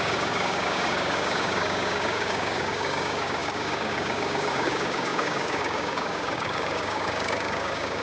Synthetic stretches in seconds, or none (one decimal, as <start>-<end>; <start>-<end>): 0.0-8.0